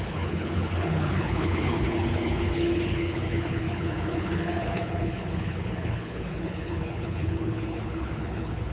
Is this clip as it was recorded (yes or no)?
no